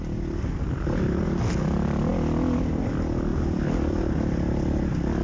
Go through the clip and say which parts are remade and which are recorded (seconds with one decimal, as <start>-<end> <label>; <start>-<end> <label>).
0.0-3.3 recorded; 3.3-4.2 remade; 4.2-5.2 recorded